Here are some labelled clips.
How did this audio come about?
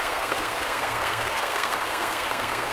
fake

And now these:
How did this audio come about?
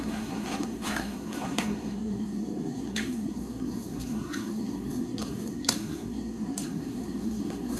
fake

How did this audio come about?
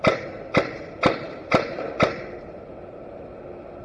real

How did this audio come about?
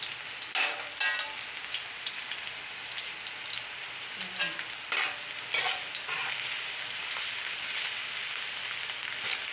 real